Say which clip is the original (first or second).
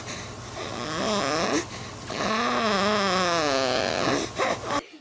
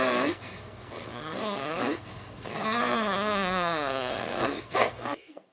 first